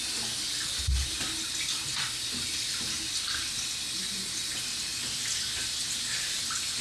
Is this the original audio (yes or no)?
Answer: yes